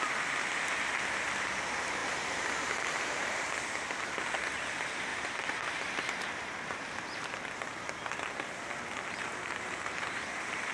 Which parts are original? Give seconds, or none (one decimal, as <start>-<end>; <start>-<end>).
0.0-2.0; 3.5-5.1; 7.5-9.3